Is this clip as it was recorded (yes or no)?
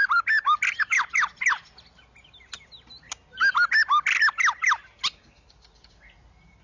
yes